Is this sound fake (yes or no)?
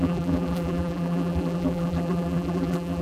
yes